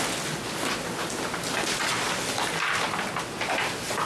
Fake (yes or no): no